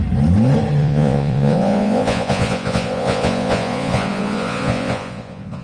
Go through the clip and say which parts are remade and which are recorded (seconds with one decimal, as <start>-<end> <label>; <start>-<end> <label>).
0.0-0.8 recorded; 0.8-5.6 remade